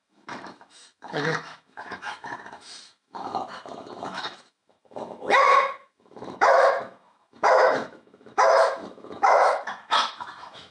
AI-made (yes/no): yes